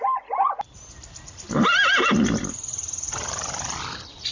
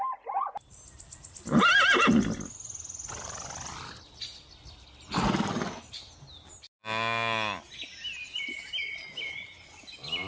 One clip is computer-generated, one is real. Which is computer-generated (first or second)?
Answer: first